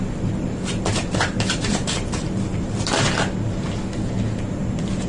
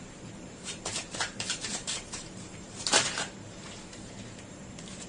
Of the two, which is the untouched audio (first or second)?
first